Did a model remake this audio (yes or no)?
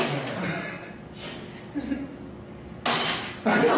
no